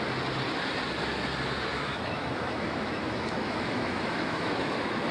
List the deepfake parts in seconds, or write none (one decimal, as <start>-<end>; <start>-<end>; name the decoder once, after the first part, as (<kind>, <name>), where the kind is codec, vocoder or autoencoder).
1.7-5.1 (autoencoder, DAC-VAE)